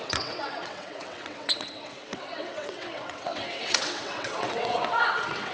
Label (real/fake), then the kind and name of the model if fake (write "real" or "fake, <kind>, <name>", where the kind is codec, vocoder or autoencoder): fake, vocoder, WaveNeXt